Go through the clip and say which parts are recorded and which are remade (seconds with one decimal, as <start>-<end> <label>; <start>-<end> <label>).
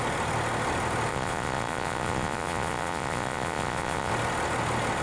0.0-1.1 recorded; 1.1-4.1 remade; 4.1-5.0 recorded